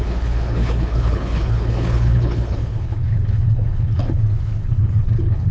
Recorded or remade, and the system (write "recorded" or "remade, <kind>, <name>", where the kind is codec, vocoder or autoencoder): remade, codec, HILCodec